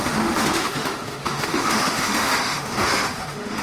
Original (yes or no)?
no